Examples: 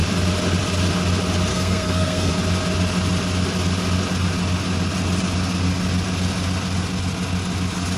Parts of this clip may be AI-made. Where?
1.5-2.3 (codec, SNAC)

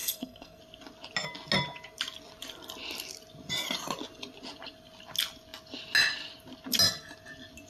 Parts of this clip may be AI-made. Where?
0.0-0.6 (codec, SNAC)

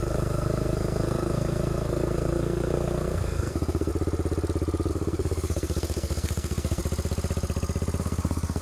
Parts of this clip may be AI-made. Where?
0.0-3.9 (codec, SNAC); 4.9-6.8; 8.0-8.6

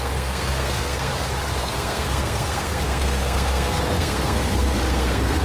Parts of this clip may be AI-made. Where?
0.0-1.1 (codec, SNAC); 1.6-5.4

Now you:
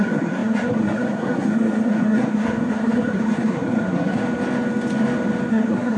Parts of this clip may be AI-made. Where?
0.0-4.2 (codec, SNAC); 5.5-6.0